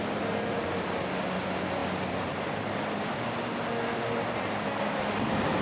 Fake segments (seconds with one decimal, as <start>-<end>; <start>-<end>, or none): none